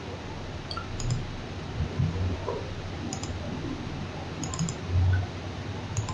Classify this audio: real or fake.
real